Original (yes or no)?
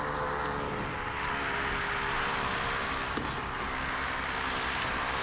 yes